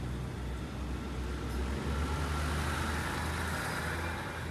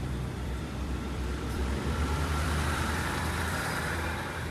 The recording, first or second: first